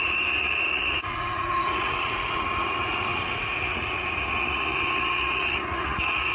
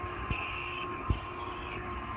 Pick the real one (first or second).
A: second